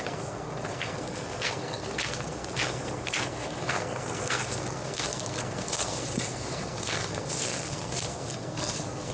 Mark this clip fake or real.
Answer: fake